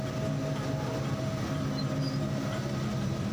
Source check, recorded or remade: recorded